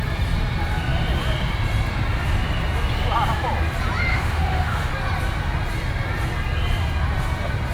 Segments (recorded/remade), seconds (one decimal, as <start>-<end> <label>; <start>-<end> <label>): 0.0-4.1 recorded; 4.1-4.9 remade; 4.9-7.7 recorded